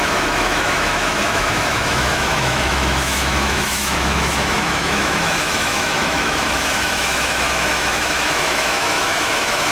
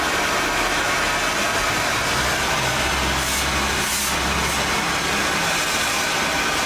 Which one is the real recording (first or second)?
second